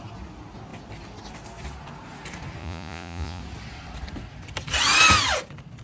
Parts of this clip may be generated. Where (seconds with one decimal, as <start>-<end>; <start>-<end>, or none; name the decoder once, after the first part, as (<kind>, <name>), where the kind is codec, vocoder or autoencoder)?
2.6-3.4 (vocoder, Vocos)